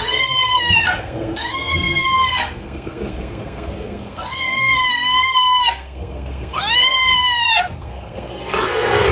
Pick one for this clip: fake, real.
fake